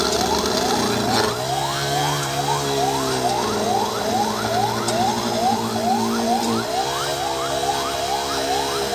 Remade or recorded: recorded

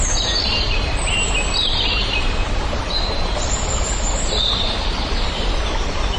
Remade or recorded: remade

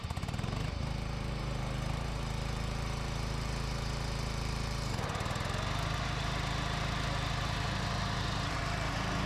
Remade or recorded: remade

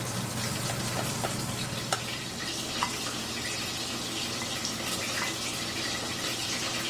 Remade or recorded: recorded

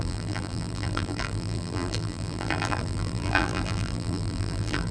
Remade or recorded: remade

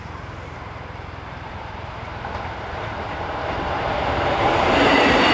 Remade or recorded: remade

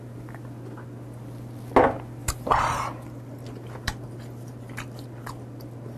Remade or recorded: recorded